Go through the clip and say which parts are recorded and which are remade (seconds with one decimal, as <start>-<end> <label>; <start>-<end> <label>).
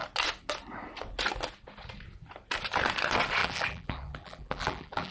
0.0-3.4 recorded; 3.4-5.1 remade